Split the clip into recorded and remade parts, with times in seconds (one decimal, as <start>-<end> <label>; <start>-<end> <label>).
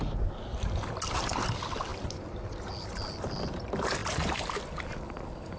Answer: 0.0-5.6 recorded